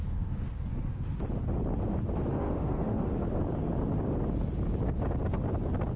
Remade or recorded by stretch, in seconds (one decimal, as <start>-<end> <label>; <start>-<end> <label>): 0.0-1.1 remade; 1.1-2.3 recorded; 2.3-3.1 remade; 3.1-6.0 recorded